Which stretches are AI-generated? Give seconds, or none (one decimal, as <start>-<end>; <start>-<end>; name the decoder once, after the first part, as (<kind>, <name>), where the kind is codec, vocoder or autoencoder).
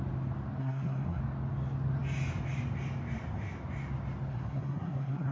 0.6-1.2 (codec, SNAC); 4.3-5.3